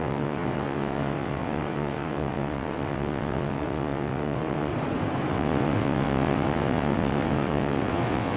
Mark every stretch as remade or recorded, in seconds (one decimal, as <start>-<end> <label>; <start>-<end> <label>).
0.0-4.7 remade; 4.7-5.3 recorded; 5.3-8.4 remade